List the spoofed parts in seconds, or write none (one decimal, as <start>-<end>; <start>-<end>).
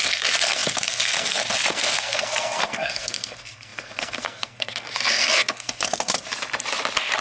0.0-6.3